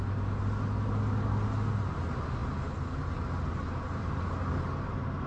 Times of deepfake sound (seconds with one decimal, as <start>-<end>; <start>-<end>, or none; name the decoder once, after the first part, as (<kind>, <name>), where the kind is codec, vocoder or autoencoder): none